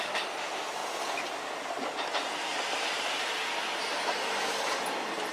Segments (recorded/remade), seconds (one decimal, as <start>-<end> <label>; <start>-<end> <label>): 0.0-5.3 recorded